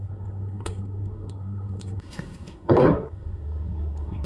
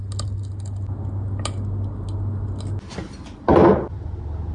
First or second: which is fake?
first